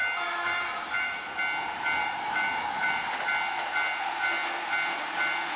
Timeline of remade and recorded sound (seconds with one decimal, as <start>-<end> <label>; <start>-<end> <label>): 0.0-1.3 remade; 1.3-2.0 recorded; 2.0-2.9 remade; 2.9-5.6 recorded